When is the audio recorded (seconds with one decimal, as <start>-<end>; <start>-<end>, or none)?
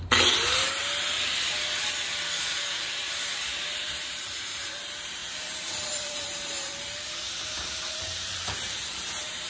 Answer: 0.8-2.4